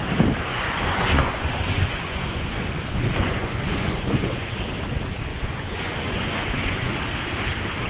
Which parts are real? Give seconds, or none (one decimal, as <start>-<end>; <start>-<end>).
0.0-0.5; 4.5-5.3; 6.9-7.9